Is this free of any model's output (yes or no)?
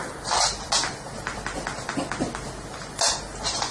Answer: no